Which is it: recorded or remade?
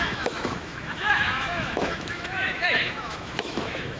remade